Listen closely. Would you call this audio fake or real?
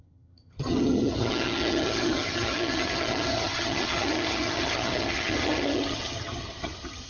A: fake